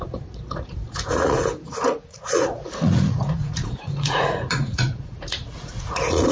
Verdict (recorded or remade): remade